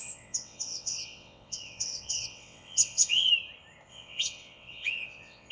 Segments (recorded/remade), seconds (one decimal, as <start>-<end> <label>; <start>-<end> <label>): 0.0-3.3 remade; 3.3-3.9 recorded; 3.9-5.5 remade